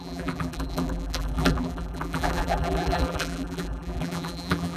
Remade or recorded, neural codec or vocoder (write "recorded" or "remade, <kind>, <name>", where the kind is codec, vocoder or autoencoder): remade, vocoder, BigVGAN v2